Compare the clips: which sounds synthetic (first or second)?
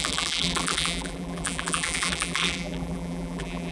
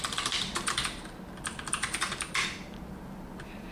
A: first